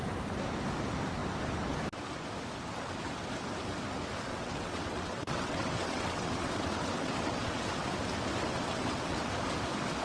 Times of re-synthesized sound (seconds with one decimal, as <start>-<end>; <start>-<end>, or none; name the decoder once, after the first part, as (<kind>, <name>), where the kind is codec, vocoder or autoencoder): 4.3-7.6 (vocoder, WaveNeXt); 8.4-9.3